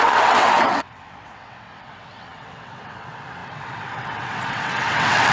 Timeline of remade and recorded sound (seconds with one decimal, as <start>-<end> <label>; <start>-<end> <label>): 0.0-5.3 remade